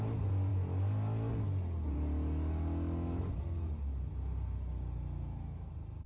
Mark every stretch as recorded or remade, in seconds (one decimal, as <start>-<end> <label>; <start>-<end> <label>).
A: 0.0-6.1 recorded